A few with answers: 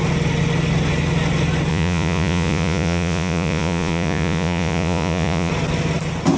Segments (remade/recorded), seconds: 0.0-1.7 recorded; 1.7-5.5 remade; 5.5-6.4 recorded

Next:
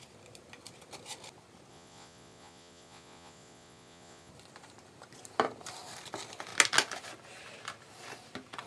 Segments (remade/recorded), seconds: 0.0-1.7 recorded; 1.7-4.3 remade; 4.3-8.7 recorded

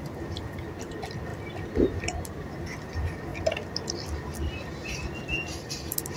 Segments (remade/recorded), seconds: 0.0-6.2 recorded